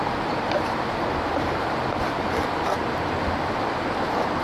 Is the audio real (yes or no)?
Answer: yes